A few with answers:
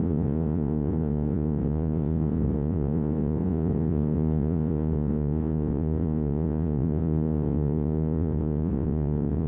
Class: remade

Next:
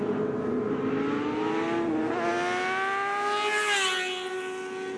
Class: recorded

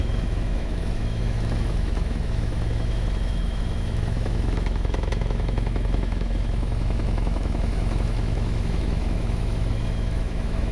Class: remade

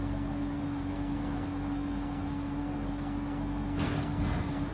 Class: remade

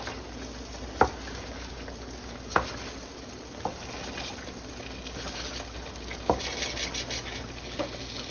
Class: recorded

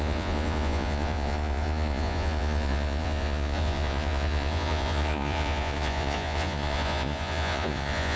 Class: remade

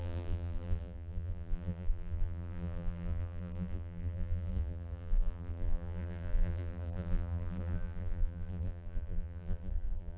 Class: remade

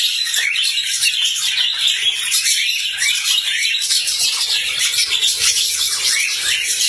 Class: remade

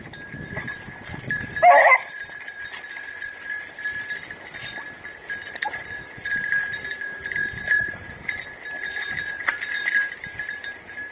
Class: recorded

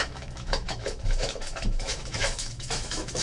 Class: remade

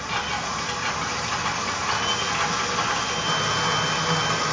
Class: recorded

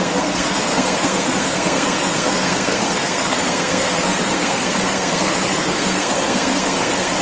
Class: remade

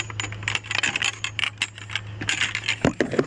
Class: recorded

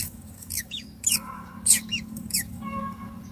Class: remade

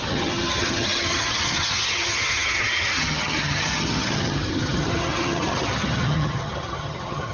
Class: remade